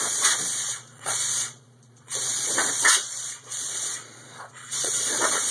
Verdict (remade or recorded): remade